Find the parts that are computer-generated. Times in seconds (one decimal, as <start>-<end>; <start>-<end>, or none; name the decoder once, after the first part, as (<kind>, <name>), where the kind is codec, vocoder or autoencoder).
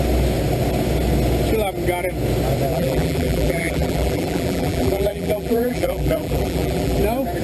2.7-7.0 (vocoder, BigVGAN v2)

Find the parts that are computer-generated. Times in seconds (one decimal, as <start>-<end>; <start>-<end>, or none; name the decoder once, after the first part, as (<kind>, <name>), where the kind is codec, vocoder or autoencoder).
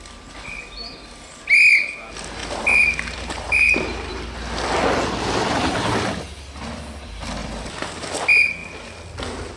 2.4-4.7 (vocoder, BigVGAN v2); 7.4-8.2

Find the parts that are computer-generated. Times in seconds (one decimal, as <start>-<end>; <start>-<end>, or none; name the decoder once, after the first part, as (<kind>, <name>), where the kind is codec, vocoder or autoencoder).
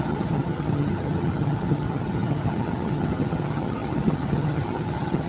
0.0-5.3 (vocoder, HiFi-GAN)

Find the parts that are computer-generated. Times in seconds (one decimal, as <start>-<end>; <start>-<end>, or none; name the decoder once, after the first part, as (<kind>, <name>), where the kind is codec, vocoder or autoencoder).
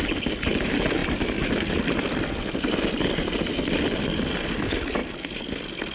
none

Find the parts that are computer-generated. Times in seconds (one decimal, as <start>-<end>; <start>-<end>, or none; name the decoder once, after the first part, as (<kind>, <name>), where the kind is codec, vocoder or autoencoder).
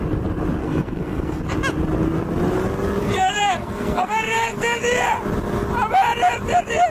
0.6-1.4 (codec, SNAC); 3.0-4.8